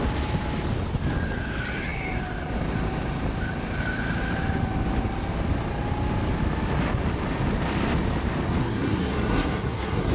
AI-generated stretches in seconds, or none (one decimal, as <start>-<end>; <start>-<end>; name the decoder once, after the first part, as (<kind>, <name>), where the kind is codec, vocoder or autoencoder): 8.6-10.1 (codec, SNAC)